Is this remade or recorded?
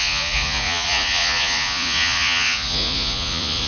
remade